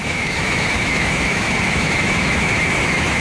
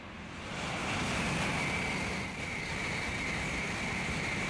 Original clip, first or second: second